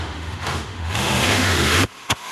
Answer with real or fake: fake